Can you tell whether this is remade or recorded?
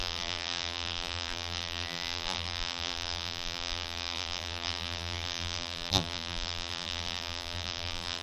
remade